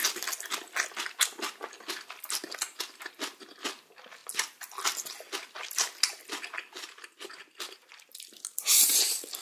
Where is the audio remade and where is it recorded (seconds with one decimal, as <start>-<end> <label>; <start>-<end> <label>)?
0.0-9.4 recorded